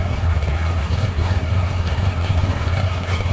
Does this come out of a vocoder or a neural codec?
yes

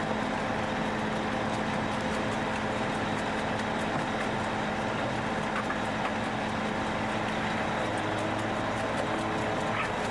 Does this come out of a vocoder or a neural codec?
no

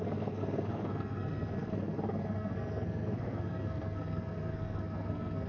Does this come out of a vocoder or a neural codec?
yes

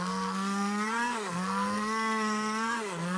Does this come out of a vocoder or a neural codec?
yes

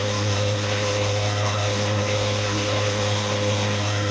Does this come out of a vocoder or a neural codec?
yes